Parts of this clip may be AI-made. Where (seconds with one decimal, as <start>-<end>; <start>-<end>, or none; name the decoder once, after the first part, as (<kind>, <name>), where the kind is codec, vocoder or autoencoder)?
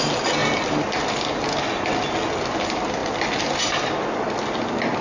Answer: none